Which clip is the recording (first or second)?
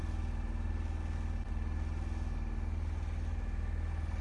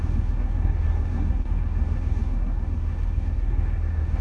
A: first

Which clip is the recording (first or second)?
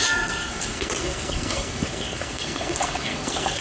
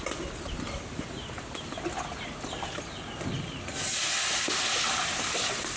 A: second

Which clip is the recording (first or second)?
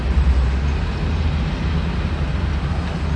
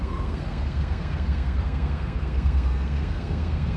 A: first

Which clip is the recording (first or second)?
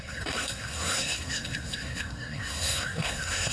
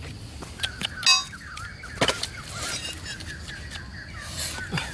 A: second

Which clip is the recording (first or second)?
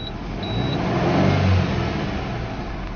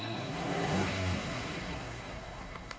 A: first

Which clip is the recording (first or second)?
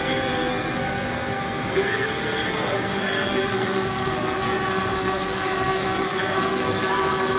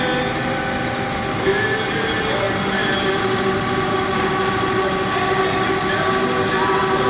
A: second